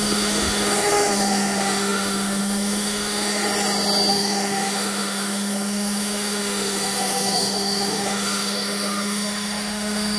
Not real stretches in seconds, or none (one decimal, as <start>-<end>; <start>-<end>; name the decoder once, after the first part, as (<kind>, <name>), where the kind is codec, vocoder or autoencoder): 0.0-3.4 (autoencoder, DAC-VAE); 4.1-10.2